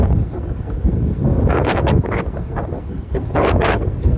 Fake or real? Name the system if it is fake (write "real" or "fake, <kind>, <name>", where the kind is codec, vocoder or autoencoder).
fake, codec, SNAC